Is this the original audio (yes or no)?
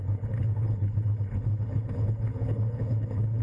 no